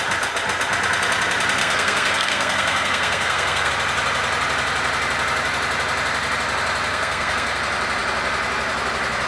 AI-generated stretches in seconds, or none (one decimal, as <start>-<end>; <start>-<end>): 1.6-3.7; 6.9-7.6